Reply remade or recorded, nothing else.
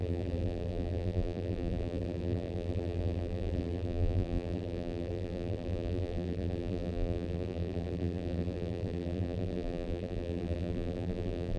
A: remade